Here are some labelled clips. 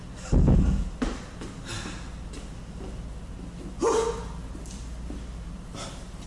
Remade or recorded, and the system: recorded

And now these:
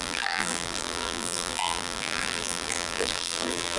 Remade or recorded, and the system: remade, vocoder, BigVGAN v2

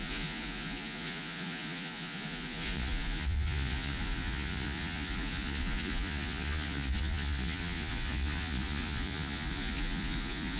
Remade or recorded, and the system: remade, vocoder, Vocos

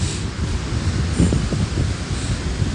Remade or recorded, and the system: recorded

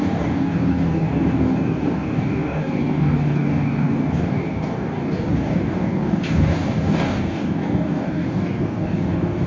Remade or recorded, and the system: remade, codec, DAC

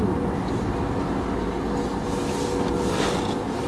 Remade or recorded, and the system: recorded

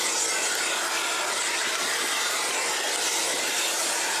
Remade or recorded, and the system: recorded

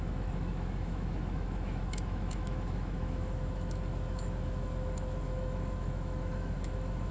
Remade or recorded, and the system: remade, autoencoder, DAC-VAE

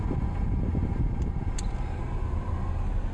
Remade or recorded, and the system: recorded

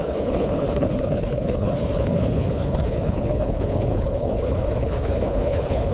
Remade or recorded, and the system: remade, codec, HILCodec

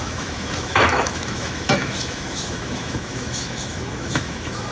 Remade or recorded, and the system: remade, autoencoder, DAC-VAE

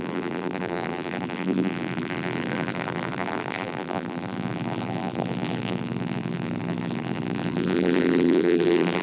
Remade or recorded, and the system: remade, vocoder, BigVGAN v2